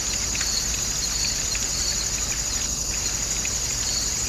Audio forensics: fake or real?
real